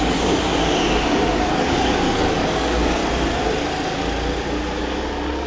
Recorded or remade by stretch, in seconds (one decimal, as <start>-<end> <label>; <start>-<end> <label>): 0.0-0.6 remade; 0.6-1.3 recorded; 1.3-3.0 remade; 3.0-4.8 recorded; 4.8-5.5 remade